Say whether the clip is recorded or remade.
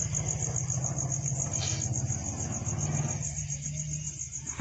recorded